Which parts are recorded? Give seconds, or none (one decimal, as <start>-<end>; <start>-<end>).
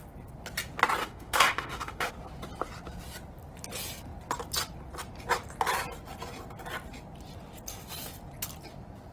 0.0-1.0; 2.1-9.1